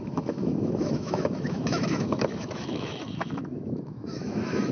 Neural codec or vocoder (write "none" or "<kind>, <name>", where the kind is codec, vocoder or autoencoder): autoencoder, DAC-VAE